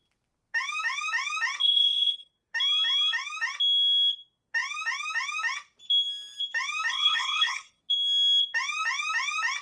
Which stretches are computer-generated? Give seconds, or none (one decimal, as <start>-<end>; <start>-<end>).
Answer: 1.6-2.3; 6.9-7.8